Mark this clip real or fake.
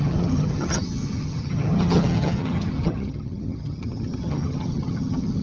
fake